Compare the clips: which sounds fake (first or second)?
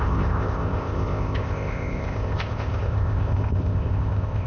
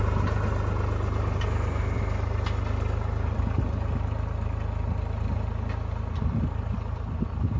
first